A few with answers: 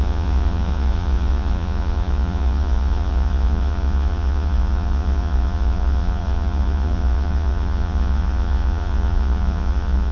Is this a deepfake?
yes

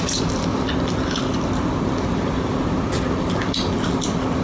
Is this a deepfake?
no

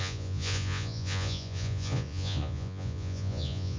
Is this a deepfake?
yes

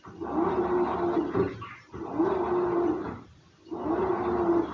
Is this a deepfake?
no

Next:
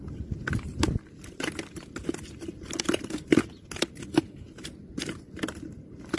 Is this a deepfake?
no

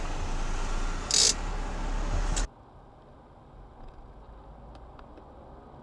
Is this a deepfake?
no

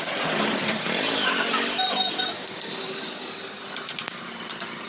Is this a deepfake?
no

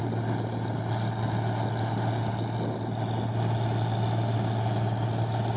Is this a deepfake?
no